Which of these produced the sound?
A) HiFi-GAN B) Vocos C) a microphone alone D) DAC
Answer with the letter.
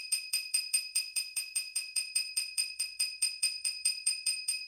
B